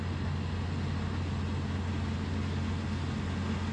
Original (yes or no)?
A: yes